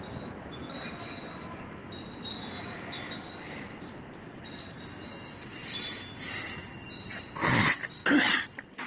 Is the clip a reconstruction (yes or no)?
no